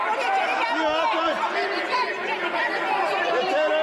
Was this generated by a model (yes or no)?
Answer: no